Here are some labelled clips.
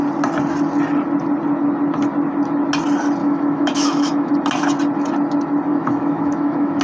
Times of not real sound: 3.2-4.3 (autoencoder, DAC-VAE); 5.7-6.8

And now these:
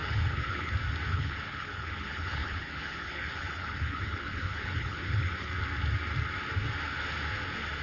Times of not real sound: 0.0-0.7 (codec, HILCodec); 1.1-5.5

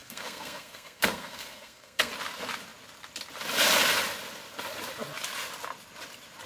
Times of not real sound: 0.0-2.1 (codec, SNAC)

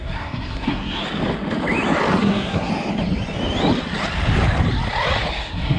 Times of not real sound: 0.0-1.0 (codec, SNAC); 2.2-2.7; 5.3-5.8

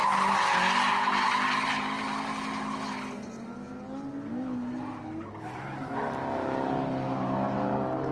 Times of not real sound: none